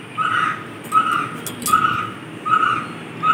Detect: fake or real real